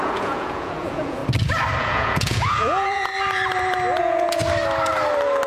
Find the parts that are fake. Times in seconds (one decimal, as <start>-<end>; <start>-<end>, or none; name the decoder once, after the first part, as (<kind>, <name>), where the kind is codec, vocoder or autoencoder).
0.0-1.2 (vocoder, Vocos); 1.8-3.1; 4.0-4.4